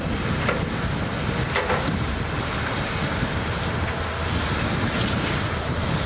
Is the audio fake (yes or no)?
no